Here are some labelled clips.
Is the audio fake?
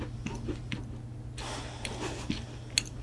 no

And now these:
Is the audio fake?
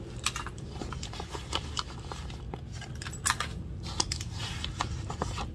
no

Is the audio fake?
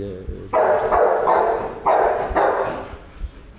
no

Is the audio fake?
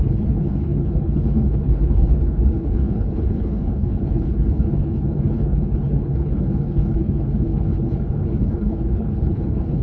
yes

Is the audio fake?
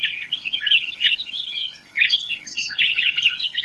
yes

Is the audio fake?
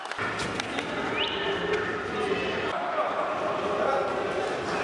no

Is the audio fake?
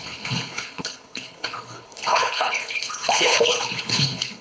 yes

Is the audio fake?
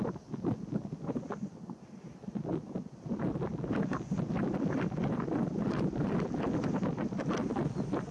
no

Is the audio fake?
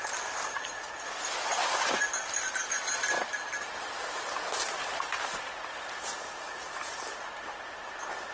no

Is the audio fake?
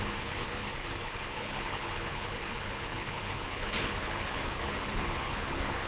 yes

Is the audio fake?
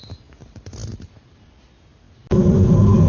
no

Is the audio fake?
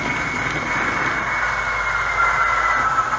no